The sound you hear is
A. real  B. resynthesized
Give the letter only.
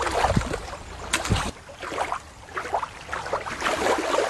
A